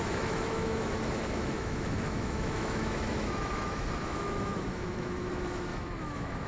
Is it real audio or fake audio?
fake